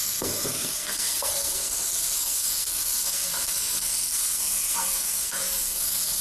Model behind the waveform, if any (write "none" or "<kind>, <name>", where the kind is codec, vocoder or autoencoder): codec, SNAC